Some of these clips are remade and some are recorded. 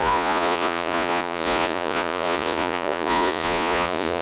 remade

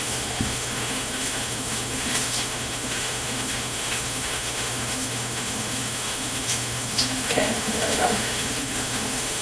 remade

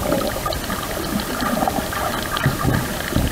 recorded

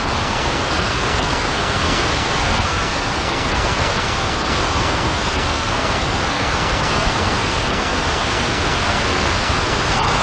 remade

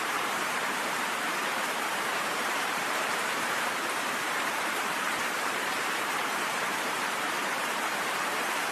remade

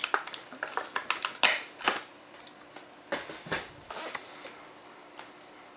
recorded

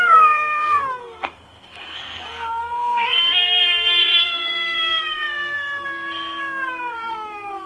remade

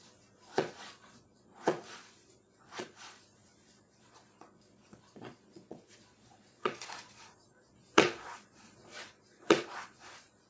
remade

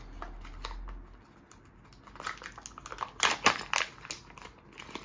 recorded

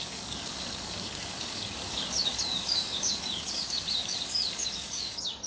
remade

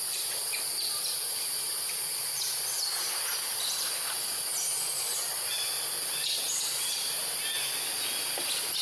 recorded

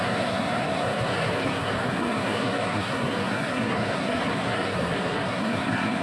remade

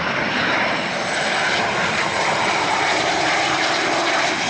remade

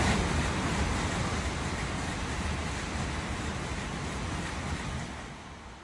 recorded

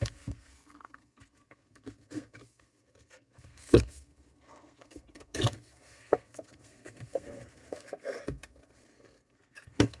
remade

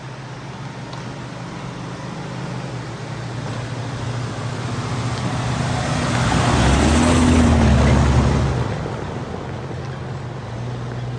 recorded